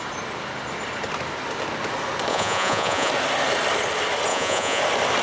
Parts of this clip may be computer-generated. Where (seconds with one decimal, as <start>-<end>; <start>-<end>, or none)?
2.3-3.1; 4.3-4.8

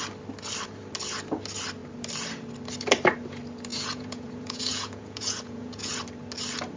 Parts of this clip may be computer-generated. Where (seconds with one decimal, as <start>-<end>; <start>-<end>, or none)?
3.7-6.0

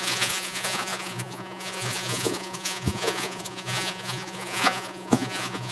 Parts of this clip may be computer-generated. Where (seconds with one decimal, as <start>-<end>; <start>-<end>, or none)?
0.0-5.7

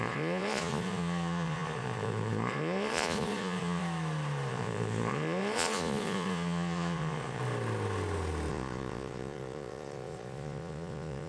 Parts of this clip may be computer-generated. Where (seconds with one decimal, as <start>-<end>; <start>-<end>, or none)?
0.0-3.8; 4.5-7.4; 8.5-11.3